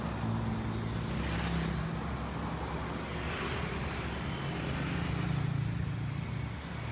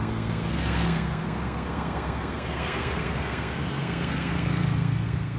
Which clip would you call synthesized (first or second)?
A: second